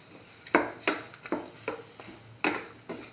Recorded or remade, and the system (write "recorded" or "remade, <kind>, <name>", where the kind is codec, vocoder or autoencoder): recorded